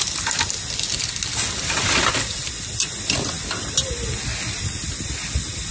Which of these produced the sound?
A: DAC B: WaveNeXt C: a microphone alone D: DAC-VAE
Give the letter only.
C